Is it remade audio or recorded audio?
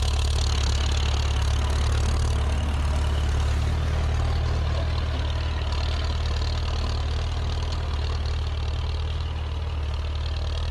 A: recorded